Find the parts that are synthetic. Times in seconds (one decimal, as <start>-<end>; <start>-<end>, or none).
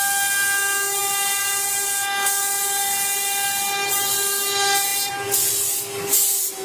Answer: none